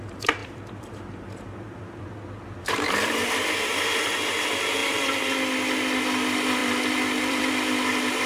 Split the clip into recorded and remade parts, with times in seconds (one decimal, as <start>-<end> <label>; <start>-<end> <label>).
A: 0.0-0.4 recorded; 0.4-4.0 remade; 4.0-4.8 recorded; 4.8-5.3 remade; 5.3-6.6 recorded; 6.6-7.5 remade; 7.5-8.3 recorded

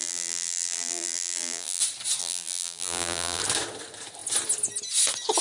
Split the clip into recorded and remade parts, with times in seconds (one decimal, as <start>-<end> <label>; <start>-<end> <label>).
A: 0.0-1.8 remade; 1.8-2.2 recorded; 2.2-3.4 remade; 3.4-5.4 recorded

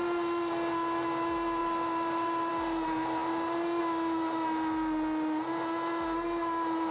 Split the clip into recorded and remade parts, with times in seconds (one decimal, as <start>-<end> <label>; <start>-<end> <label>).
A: 0.0-1.6 recorded; 1.6-2.5 remade; 2.5-6.9 recorded

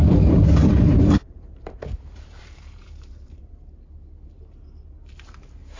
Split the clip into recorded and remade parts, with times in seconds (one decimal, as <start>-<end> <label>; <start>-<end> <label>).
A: 0.0-3.5 remade; 3.5-5.8 recorded

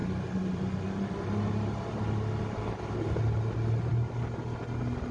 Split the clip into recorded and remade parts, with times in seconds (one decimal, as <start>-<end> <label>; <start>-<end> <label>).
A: 0.0-5.1 recorded

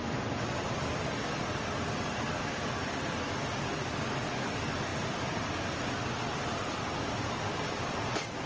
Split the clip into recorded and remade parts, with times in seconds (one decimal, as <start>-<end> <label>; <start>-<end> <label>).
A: 0.0-8.5 remade

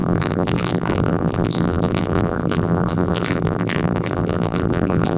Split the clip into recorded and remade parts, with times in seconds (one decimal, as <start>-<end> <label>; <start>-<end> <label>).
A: 0.0-5.2 remade

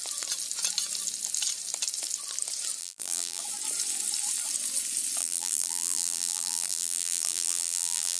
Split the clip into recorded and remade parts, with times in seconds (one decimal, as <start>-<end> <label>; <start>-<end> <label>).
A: 0.0-2.8 recorded; 2.8-3.4 remade; 3.4-5.2 recorded; 5.2-8.2 remade